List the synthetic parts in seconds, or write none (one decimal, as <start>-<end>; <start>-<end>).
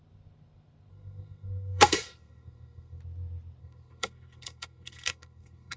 0.9-3.0; 3.6-5.8